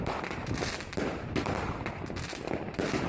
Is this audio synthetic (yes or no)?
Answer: no